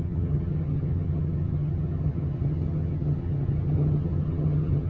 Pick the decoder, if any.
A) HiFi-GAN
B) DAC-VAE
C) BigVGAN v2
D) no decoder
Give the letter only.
A